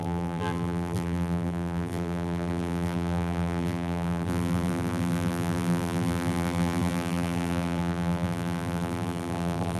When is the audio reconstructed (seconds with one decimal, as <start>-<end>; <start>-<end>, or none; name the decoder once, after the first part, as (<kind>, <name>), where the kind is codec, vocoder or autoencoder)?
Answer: 0.0-9.8 (vocoder, BigVGAN v2)